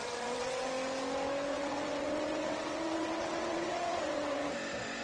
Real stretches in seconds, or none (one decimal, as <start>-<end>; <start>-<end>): 0.7-1.5; 4.5-5.0